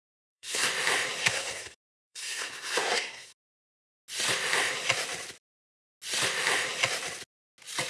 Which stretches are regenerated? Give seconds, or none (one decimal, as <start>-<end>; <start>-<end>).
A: 0.0-0.7; 1.2-3.9